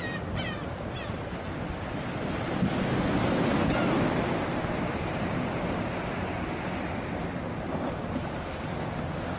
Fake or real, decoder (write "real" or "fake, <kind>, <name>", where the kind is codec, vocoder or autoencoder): real